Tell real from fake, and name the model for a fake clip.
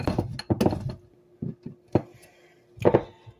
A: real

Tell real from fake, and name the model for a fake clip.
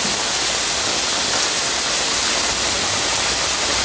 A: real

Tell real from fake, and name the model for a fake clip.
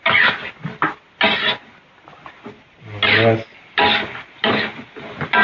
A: real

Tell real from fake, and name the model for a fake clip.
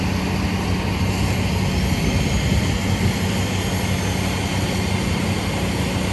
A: real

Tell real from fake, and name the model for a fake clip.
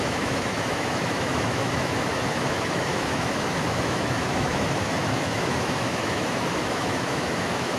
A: fake, autoencoder, DAC-VAE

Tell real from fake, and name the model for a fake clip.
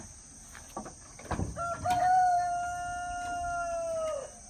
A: real